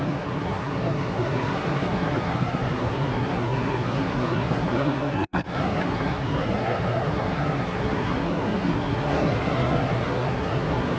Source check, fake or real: fake